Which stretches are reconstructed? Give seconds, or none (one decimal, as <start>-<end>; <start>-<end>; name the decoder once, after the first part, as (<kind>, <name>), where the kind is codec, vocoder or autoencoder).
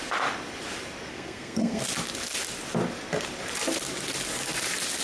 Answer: 1.1-1.8 (codec, SNAC)